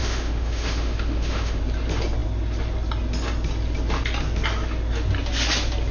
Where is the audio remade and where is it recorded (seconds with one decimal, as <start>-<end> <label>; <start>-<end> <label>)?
0.0-1.6 remade; 1.6-5.9 recorded